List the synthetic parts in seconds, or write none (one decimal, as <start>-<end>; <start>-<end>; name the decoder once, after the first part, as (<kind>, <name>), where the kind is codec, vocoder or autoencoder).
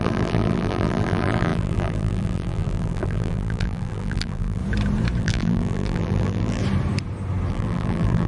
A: 0.0-4.6 (vocoder, BigVGAN v2); 5.2-6.6; 7.5-8.3